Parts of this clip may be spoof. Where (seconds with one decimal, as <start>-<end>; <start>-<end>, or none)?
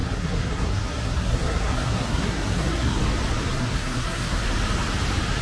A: 0.0-3.0; 3.6-4.4